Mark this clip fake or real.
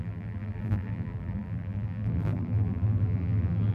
fake